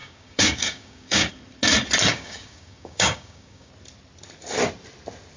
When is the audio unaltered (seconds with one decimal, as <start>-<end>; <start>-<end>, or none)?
1.3-2.1; 3.7-5.4